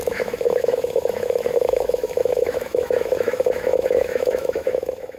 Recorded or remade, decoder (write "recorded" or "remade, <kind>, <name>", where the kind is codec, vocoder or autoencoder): remade, autoencoder, DAC-VAE